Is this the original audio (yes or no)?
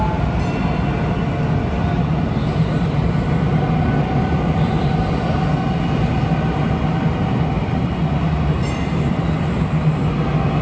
yes